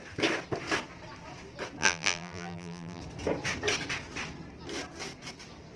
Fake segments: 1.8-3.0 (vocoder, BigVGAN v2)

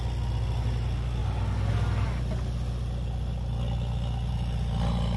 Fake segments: none

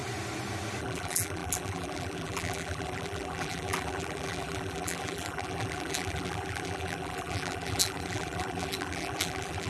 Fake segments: 0.8-9.7 (vocoder, BigVGAN v2)

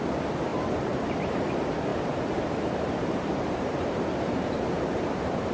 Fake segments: 0.5-1.5 (vocoder, BigVGAN v2); 1.9-5.5